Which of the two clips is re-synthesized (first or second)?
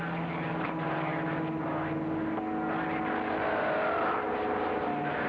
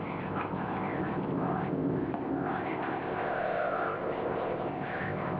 second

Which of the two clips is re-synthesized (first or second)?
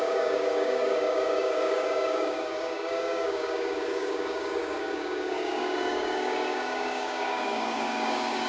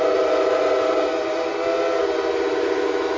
first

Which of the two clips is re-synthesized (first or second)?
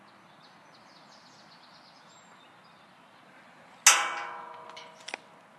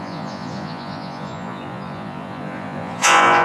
second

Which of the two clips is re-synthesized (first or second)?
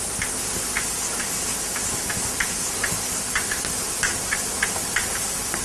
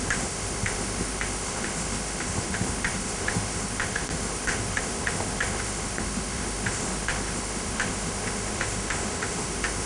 second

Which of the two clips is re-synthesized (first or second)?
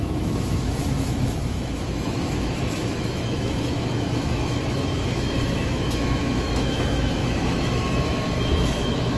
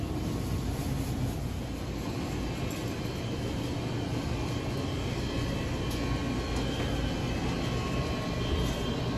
first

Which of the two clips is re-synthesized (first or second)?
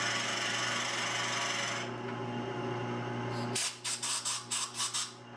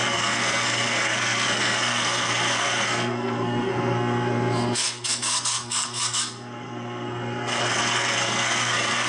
second